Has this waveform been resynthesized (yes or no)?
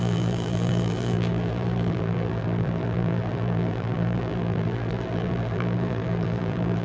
yes